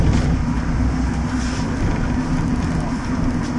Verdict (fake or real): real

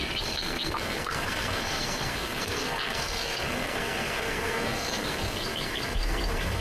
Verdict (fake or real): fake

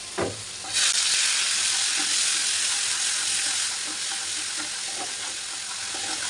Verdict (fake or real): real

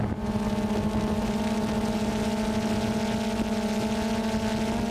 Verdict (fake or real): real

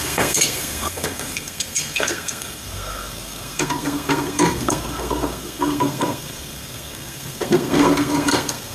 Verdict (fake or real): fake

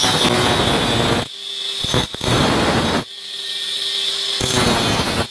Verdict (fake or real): real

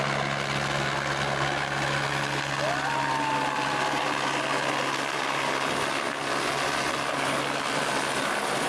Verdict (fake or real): real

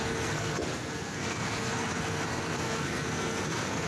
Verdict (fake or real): fake